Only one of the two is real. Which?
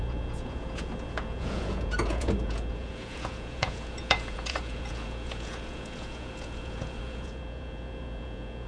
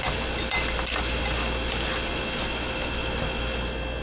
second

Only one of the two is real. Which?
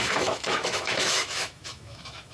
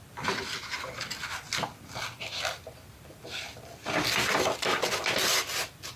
second